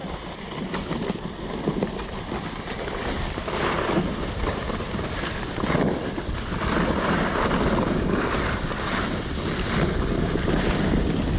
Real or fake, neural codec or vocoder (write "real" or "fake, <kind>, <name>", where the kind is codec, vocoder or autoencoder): real